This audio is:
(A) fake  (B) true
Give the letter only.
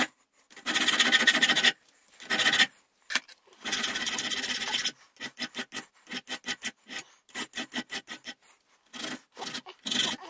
B